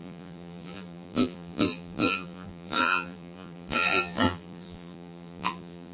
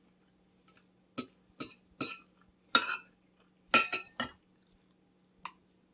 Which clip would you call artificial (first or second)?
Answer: first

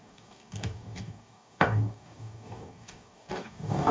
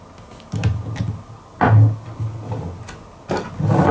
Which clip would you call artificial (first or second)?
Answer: first